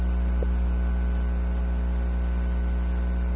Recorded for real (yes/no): yes